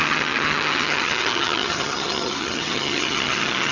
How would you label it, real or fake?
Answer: fake